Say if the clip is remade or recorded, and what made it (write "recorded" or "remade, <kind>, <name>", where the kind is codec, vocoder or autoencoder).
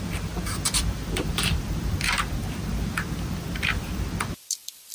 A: remade, vocoder, BigVGAN v2